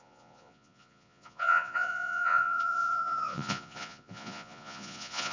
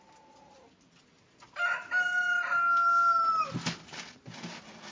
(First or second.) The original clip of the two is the second